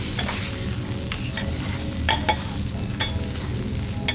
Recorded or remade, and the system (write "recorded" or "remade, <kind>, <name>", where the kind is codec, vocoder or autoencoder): recorded